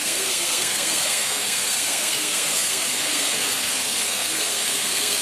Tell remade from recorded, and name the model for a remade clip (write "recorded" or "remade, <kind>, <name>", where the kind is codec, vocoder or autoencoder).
remade, codec, SNAC